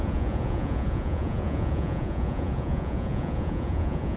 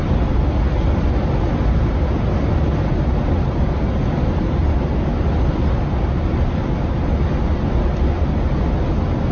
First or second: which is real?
second